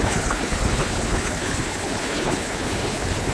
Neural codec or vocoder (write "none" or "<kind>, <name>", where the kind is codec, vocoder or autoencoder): codec, HILCodec